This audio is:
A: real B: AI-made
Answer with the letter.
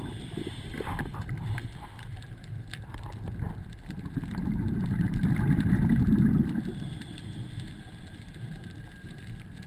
B